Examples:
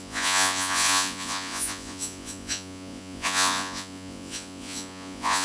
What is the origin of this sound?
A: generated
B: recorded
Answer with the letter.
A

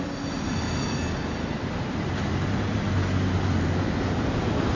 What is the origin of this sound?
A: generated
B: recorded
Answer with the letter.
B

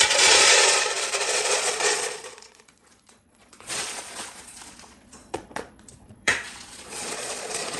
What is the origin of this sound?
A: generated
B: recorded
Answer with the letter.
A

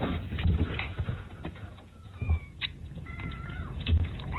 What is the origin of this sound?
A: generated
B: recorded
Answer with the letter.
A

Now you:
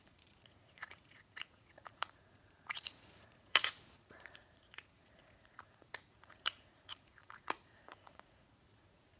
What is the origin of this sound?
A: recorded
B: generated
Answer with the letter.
B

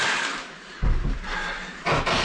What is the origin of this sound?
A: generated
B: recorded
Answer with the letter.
B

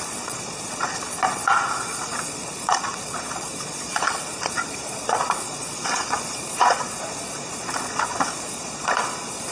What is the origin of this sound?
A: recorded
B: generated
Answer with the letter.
B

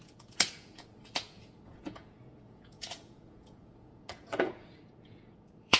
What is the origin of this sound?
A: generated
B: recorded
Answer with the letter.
A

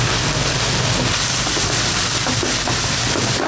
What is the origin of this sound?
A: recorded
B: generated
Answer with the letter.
A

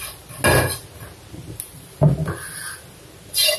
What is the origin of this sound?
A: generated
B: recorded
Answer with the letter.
B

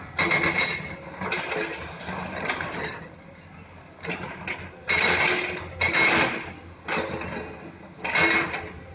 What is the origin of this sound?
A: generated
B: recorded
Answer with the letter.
B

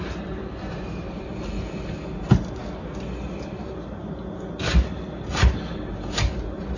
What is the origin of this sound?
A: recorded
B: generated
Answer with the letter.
A